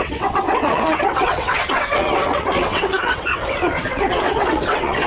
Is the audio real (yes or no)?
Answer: no